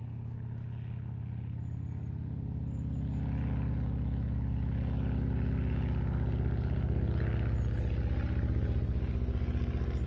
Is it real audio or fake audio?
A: real